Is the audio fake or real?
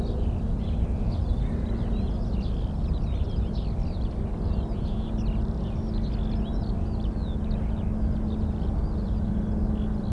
real